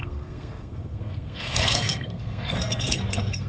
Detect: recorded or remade remade